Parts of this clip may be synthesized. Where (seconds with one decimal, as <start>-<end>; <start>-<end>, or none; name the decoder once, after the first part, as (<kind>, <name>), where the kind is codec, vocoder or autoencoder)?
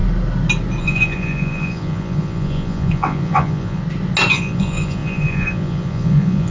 0.8-3.8 (vocoder, Vocos); 4.3-6.5